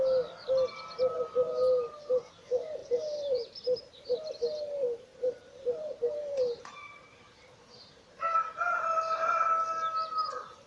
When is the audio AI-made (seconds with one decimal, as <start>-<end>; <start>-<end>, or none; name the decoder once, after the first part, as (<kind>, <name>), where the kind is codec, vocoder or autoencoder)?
2.8-4.3 (vocoder, BigVGAN v2); 5.1-6.6